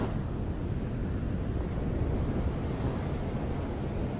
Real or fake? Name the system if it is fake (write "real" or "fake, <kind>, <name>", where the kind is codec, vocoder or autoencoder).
real